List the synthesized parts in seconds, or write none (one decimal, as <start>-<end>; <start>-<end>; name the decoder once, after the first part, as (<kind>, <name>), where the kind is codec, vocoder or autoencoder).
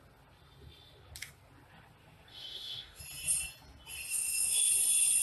2.3-3.0 (autoencoder, DAC-VAE); 4.1-4.7